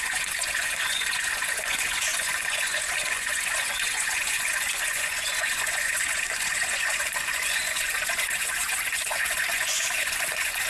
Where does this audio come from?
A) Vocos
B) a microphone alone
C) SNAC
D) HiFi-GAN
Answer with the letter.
A